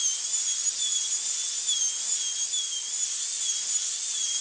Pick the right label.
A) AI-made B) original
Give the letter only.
B